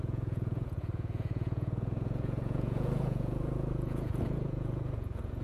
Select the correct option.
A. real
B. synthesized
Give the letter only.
B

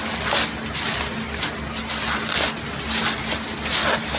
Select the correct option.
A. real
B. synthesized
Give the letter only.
A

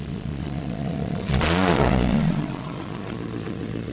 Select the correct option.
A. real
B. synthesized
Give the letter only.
B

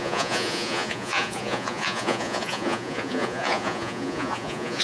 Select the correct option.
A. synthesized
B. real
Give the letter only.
A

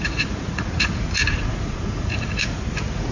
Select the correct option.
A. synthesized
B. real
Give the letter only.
A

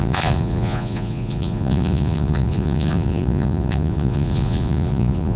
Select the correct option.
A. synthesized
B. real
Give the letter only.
A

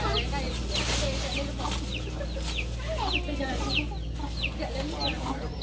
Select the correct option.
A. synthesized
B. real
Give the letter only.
B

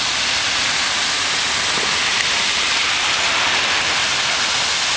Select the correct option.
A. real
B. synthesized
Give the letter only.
A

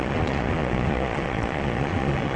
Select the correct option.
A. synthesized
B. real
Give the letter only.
A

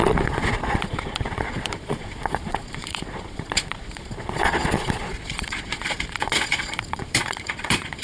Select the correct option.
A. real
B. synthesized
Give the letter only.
B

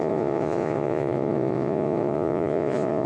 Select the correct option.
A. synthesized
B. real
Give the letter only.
A